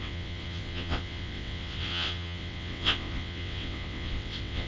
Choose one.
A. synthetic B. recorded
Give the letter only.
A